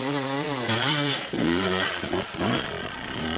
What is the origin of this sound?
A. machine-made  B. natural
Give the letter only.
A